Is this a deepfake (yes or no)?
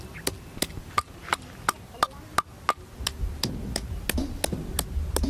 no